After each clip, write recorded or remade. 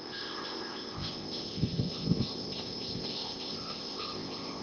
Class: remade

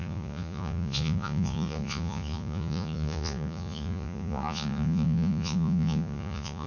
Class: remade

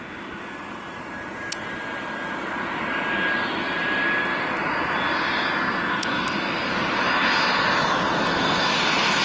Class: recorded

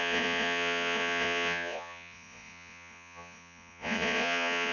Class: remade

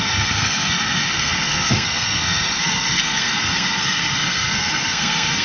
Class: remade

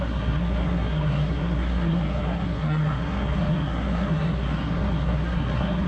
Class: remade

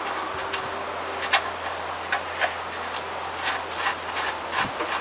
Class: recorded